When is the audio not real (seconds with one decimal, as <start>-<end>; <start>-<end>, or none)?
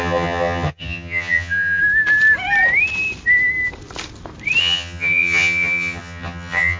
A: 0.0-1.8; 4.6-6.8